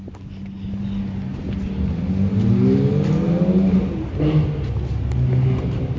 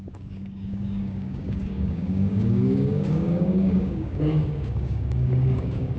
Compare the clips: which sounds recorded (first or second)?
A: first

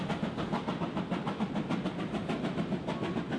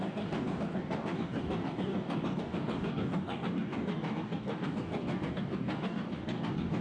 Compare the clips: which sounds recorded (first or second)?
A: first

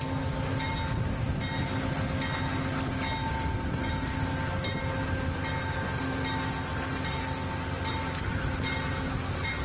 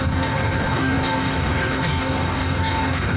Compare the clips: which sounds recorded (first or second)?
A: first